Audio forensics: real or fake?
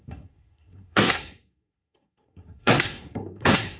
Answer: fake